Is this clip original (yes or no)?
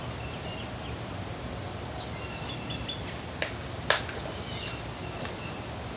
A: yes